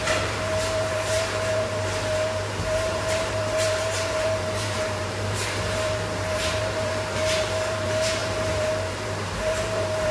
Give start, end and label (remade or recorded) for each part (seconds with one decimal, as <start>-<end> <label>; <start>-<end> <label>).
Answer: 0.0-10.1 remade